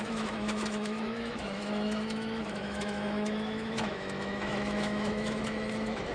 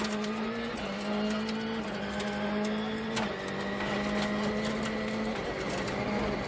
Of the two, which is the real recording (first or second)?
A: second